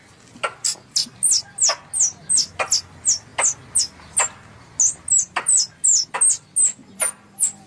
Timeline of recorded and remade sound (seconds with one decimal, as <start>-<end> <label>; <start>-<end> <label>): 0.0-7.7 recorded